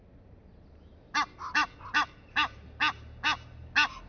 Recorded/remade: recorded